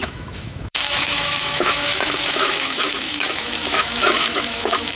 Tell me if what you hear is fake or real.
fake